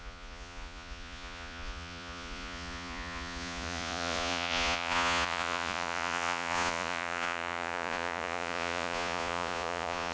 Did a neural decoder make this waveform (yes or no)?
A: yes